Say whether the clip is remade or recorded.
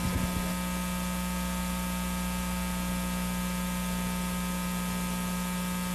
recorded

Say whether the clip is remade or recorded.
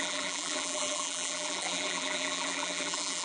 remade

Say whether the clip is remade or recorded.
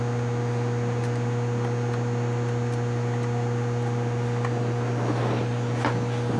recorded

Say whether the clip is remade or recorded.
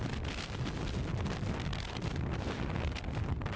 recorded